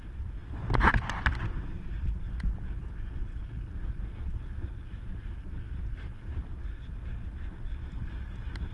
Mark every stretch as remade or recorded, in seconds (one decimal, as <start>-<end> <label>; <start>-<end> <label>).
0.0-8.7 recorded